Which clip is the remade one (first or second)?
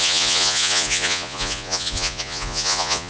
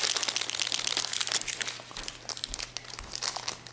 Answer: first